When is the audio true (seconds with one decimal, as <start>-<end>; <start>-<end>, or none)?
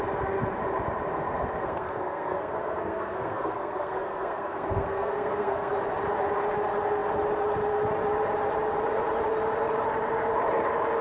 0.0-1.1; 5.7-11.0